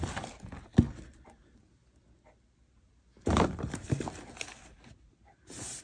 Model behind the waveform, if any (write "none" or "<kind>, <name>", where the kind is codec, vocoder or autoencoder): none